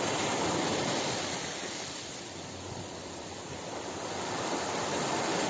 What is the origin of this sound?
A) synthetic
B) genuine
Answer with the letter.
A